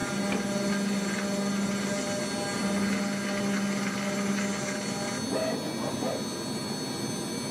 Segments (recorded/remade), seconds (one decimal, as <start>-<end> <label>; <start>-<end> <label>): 0.0-7.5 recorded